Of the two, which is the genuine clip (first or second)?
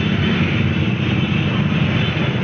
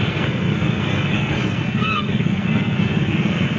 first